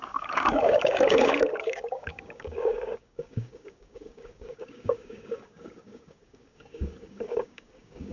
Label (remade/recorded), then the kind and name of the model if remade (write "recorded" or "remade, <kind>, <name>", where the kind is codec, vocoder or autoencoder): remade, codec, DAC